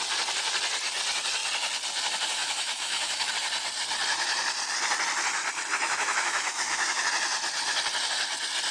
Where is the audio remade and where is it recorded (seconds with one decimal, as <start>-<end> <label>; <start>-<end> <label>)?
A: 0.0-2.4 recorded; 2.4-3.3 remade; 3.3-5.7 recorded; 5.7-7.1 remade; 7.1-8.7 recorded